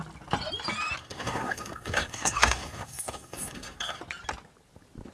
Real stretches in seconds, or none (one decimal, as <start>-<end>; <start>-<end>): 0.0-1.0; 4.0-5.1